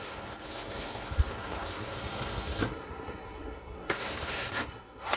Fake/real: fake